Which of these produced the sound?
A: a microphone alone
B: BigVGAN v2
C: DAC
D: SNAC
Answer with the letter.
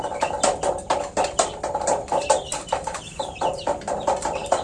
B